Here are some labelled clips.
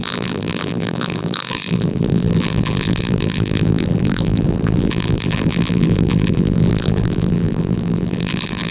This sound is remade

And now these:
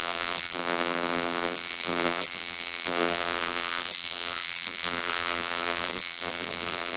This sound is remade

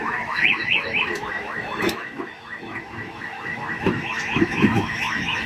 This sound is remade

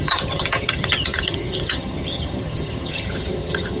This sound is remade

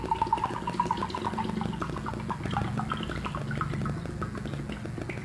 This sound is recorded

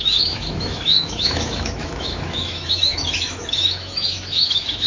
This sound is remade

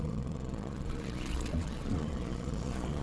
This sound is remade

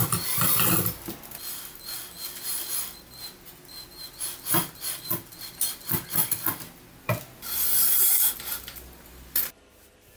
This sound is recorded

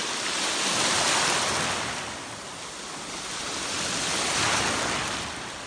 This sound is recorded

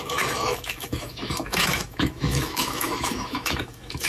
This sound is remade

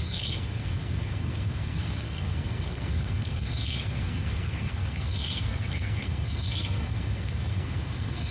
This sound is remade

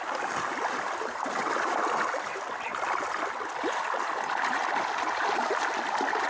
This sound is recorded